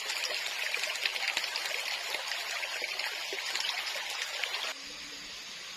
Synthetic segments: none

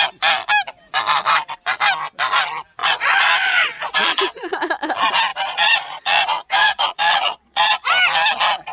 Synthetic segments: 2.8-4.6 (vocoder, Vocos); 5.3-7.9

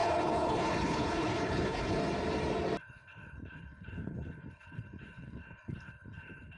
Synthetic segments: 0.0-2.0 (codec, HILCodec); 2.8-6.6

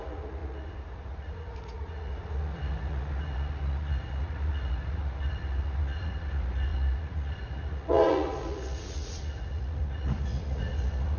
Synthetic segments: 0.0-11.2 (vocoder, Vocos)

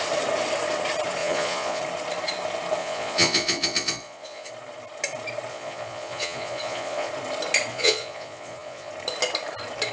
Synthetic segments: 1.2-1.8 (vocoder, Vocos); 2.8-4.5; 5.5-7.1; 7.7-8.9